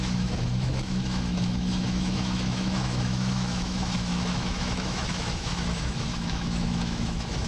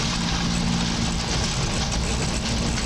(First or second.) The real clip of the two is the second